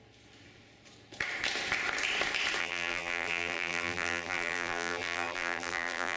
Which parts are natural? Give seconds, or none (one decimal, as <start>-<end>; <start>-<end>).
0.0-2.6